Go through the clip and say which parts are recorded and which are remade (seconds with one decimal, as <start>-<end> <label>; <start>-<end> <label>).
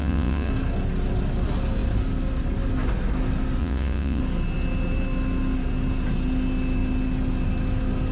0.0-0.5 remade; 0.5-3.6 recorded; 3.6-4.2 remade; 4.2-8.1 recorded